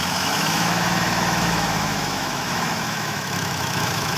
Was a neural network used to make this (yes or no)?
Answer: yes